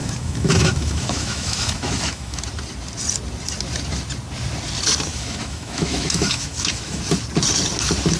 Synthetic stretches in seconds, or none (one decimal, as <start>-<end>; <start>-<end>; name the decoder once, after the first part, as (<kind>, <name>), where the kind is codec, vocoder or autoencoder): 0.0-2.4 (autoencoder, DAC-VAE); 5.1-7.0